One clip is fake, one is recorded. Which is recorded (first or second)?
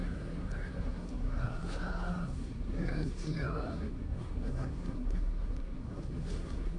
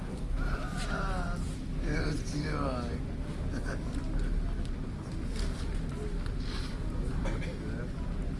second